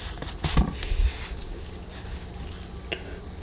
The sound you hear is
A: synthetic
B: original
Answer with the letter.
B